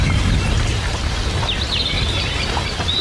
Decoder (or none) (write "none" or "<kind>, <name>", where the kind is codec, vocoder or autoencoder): none